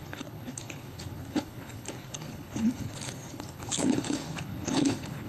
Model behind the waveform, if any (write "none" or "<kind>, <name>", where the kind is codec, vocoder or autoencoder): codec, HILCodec